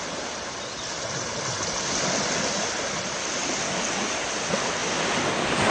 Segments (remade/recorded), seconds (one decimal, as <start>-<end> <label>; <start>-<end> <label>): 0.0-5.7 recorded